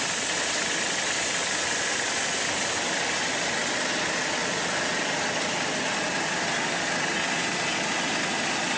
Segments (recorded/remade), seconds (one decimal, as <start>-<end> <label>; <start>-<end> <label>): 0.0-8.8 recorded